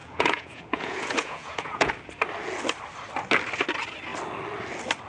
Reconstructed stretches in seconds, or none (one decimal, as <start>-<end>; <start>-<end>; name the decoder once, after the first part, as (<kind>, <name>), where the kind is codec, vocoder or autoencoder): 0.0-1.9 (vocoder, Vocos)